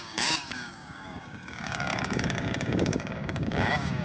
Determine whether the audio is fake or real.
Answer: fake